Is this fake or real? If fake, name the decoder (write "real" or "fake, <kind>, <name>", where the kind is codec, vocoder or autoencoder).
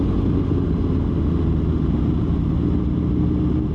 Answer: real